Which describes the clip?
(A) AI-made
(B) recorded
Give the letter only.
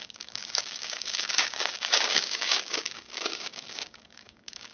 A